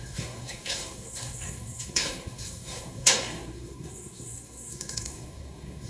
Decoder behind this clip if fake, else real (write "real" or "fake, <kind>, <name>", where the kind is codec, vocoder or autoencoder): fake, codec, SNAC